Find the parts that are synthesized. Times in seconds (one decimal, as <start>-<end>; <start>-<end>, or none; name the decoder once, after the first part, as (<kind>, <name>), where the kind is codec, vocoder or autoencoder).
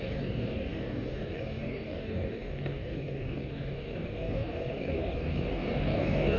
0.0-6.4 (codec, DAC)